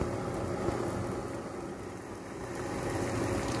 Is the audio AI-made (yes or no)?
no